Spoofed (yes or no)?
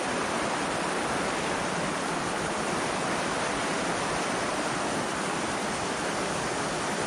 yes